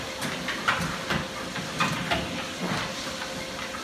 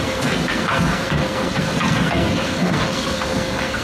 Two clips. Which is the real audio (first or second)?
first